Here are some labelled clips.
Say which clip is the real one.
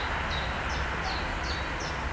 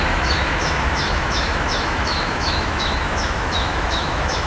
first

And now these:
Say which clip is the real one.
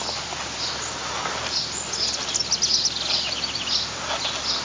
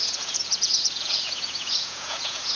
first